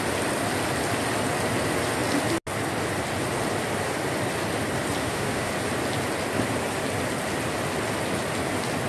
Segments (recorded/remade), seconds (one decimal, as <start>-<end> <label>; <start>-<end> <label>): 0.0-5.0 recorded; 5.0-5.5 remade; 5.5-8.9 recorded